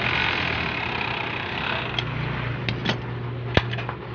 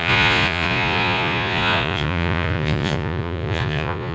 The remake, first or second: second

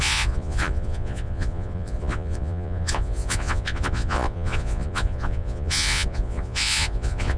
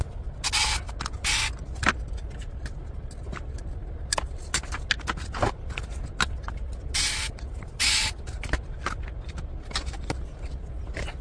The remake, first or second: first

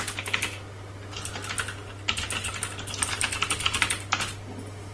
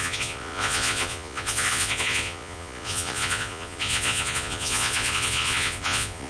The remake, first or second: second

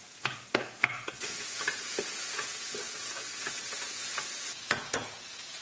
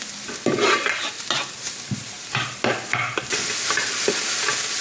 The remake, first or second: first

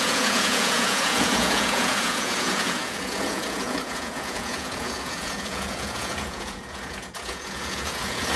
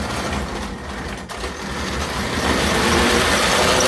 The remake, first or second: first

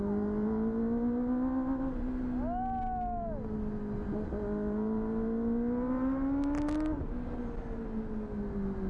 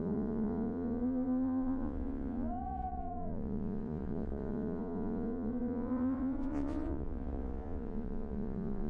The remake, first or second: second